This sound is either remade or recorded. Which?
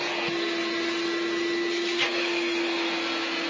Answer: recorded